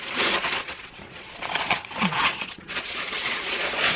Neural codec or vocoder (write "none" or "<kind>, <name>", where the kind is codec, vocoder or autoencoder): vocoder, Vocos